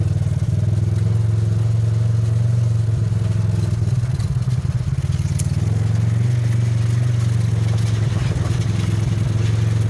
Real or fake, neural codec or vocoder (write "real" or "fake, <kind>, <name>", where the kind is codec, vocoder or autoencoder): real